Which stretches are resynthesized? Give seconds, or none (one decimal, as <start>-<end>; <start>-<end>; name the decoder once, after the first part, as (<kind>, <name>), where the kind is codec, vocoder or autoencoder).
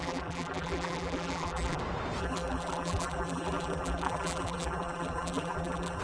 0.0-1.8 (vocoder, BigVGAN v2); 2.2-6.0